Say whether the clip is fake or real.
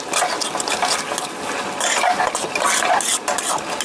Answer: real